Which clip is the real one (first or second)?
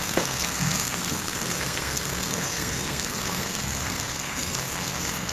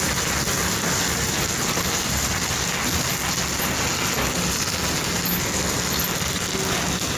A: second